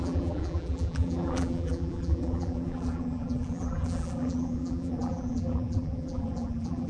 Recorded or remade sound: remade